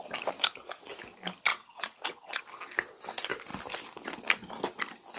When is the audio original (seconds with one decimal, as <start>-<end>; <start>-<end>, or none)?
0.0-1.5; 2.4-5.2